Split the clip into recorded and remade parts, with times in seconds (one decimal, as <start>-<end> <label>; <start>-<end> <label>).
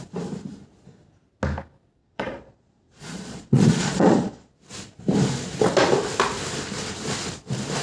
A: 0.0-2.0 recorded; 2.0-4.5 remade; 4.5-7.8 recorded